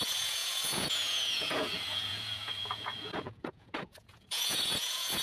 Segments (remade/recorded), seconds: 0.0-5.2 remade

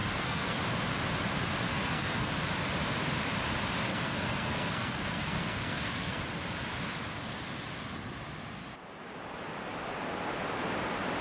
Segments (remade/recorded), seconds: 0.0-0.6 remade; 0.6-1.7 recorded; 1.7-2.3 remade; 2.3-3.9 recorded; 3.9-6.2 remade; 6.2-11.2 recorded